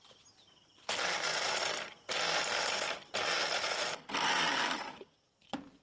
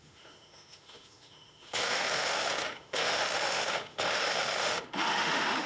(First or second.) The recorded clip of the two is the first